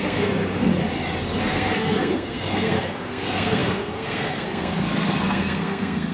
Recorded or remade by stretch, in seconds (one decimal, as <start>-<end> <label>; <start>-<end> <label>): 0.0-0.7 remade; 0.7-1.4 recorded; 1.4-6.1 remade